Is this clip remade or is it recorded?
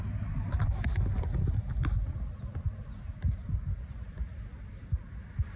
recorded